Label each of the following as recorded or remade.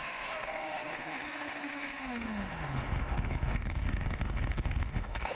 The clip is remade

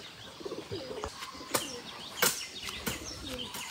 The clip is recorded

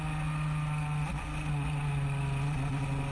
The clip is recorded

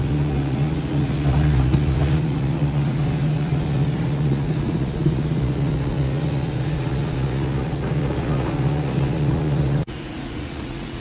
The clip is remade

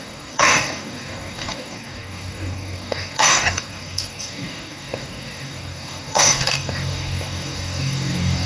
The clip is remade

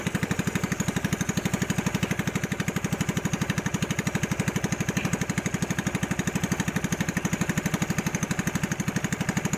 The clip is recorded